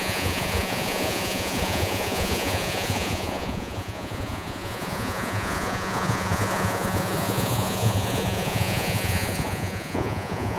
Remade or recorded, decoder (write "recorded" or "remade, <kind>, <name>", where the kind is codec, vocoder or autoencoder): remade, vocoder, Vocos